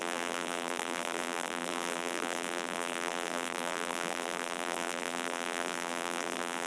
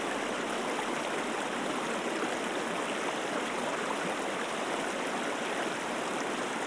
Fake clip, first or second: first